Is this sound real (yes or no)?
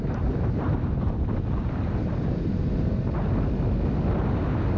yes